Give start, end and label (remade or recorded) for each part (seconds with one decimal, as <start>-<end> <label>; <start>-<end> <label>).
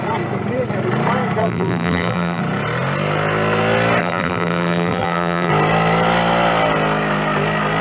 0.0-1.4 recorded; 1.4-2.4 remade; 2.4-4.0 recorded; 4.0-5.5 remade; 5.5-7.8 recorded